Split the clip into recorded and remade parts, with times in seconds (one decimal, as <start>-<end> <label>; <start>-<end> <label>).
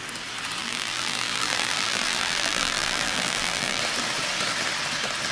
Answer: 0.0-0.6 recorded; 0.6-3.8 remade; 3.8-5.3 recorded